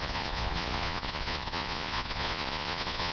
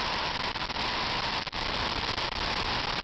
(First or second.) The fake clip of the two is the first